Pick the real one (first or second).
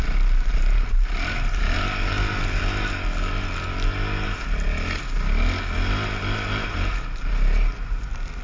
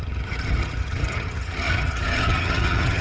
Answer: first